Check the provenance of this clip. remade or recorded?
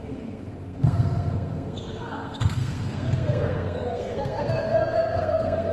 remade